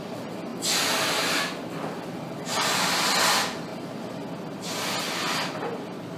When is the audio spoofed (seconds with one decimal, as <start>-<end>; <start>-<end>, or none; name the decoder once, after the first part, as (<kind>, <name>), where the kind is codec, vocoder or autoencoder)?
none